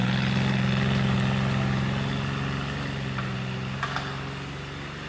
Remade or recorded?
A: recorded